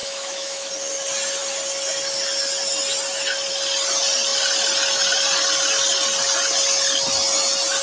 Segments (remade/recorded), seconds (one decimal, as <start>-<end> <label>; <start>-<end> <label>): 0.0-0.7 remade; 0.7-7.8 recorded